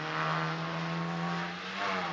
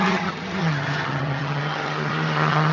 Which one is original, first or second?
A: first